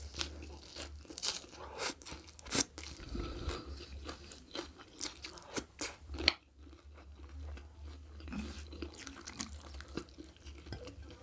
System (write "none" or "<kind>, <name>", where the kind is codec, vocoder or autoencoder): none